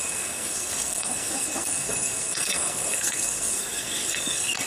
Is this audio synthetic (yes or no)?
yes